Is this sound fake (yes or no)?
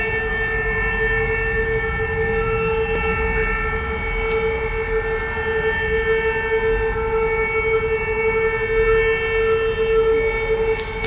no